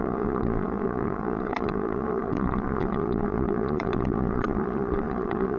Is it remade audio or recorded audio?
remade